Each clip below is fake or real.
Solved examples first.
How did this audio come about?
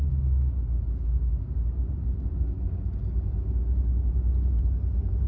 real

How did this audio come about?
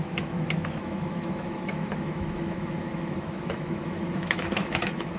fake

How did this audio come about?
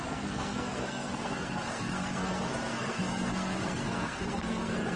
fake